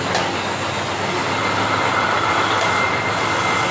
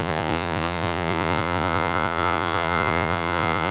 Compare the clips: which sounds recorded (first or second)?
first